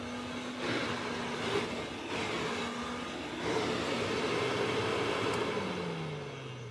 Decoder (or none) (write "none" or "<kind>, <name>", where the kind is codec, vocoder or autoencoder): none